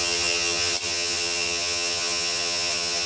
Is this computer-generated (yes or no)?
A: yes